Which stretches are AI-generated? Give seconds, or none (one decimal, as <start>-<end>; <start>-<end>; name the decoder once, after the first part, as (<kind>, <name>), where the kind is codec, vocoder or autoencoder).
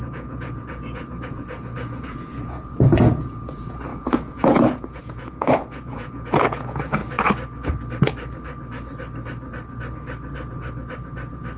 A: 0.0-7.0 (vocoder, Vocos)